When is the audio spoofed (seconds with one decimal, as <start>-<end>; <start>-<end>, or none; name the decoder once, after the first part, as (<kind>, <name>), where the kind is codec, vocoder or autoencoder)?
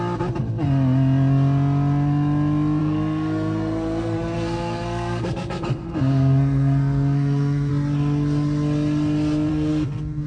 2.8-7.7 (codec, SNAC); 9.5-10.3